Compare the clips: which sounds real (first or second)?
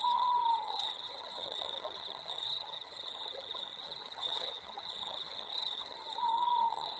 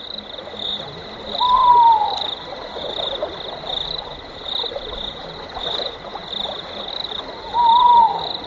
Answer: second